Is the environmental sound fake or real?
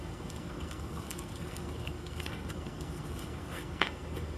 fake